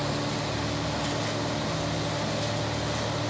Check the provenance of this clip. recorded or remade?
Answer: recorded